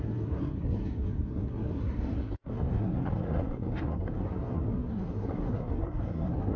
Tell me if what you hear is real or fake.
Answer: fake